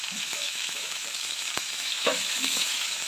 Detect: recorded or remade remade